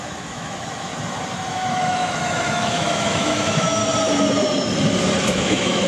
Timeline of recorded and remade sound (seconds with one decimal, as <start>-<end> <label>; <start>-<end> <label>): 0.0-0.9 remade; 0.9-1.5 recorded; 1.5-3.8 remade; 3.8-5.2 recorded; 5.2-5.9 remade